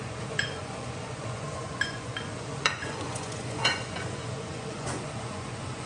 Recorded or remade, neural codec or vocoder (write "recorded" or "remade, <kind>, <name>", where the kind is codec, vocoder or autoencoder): remade, vocoder, Vocos